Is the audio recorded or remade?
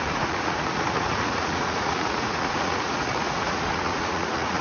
remade